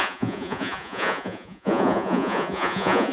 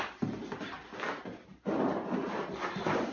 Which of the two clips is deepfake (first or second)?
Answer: first